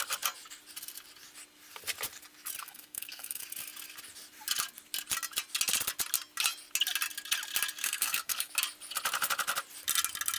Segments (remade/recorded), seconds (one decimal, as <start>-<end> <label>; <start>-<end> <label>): 0.0-2.6 recorded; 2.6-3.4 remade; 3.4-7.8 recorded; 7.8-8.5 remade; 8.5-10.4 recorded